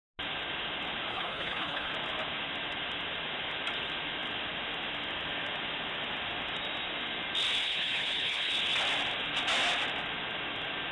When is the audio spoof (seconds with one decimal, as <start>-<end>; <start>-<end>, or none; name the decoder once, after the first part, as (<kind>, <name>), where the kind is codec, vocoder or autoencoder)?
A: 1.1-1.9 (codec, HILCodec); 7.6-8.5